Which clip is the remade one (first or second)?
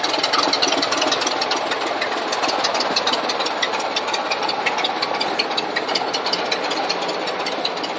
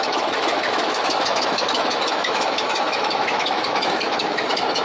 second